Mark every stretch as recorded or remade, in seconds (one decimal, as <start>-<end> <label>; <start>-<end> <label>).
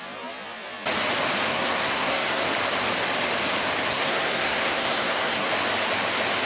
0.0-1.5 recorded; 1.5-2.4 remade; 2.4-3.9 recorded; 3.9-5.5 remade; 5.5-6.5 recorded